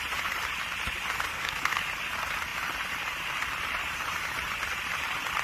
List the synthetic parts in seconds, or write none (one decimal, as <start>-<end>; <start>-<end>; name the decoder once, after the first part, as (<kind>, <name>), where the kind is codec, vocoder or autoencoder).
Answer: 1.3-1.8 (codec, SNAC)